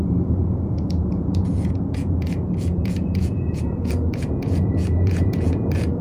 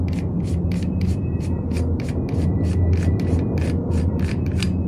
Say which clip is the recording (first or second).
second